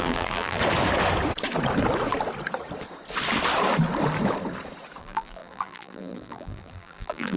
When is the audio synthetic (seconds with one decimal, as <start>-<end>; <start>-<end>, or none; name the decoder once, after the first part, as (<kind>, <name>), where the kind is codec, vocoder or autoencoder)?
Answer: 0.0-0.6 (vocoder, BigVGAN v2); 5.0-7.4